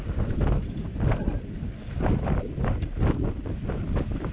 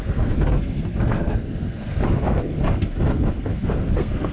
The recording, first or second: first